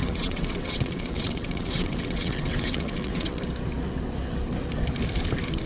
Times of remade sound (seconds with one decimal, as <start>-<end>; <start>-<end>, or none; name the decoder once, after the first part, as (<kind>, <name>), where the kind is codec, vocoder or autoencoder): 0.0-3.4 (vocoder, WaveNeXt)